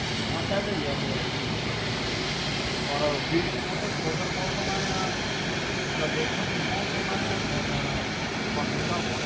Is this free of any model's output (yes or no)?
yes